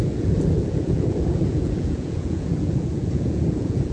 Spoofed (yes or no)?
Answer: yes